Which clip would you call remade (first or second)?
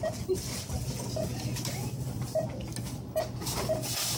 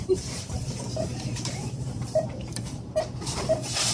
second